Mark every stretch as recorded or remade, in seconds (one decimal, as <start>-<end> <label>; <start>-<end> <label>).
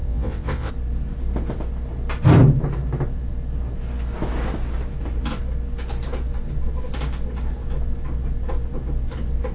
0.0-0.7 remade; 0.7-9.5 recorded